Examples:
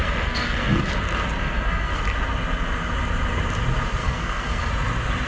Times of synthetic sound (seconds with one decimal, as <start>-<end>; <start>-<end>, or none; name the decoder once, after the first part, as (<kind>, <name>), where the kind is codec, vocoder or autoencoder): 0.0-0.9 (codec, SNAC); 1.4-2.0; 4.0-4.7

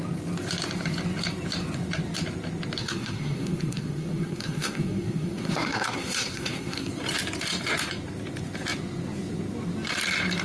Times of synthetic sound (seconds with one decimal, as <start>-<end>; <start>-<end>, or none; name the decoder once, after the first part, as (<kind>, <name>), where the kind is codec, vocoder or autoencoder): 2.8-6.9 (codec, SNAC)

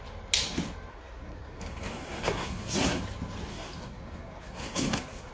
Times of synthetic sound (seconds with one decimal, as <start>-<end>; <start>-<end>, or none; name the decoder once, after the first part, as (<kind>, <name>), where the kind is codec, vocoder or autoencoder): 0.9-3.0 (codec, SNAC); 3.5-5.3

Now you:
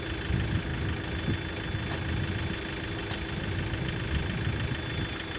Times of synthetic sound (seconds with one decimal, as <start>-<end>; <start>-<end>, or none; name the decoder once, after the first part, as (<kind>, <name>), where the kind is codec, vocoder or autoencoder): none

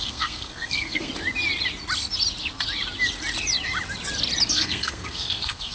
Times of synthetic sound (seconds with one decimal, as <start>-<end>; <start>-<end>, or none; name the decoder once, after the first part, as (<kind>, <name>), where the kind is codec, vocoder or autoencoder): 0.0-1.1 (codec, SNAC); 4.5-5.7

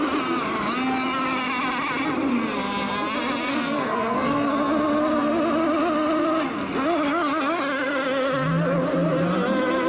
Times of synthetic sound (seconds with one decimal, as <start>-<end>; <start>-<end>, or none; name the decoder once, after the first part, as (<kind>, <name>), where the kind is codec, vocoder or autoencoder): 3.5-4.5 (codec, SNAC)

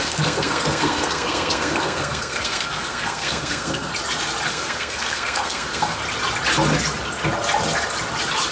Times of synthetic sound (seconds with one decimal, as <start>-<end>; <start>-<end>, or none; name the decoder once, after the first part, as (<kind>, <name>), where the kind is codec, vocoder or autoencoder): 0.0-3.9 (codec, SNAC); 4.5-6.0